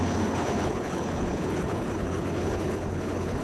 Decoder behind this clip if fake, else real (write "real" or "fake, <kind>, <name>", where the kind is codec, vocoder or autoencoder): fake, codec, HILCodec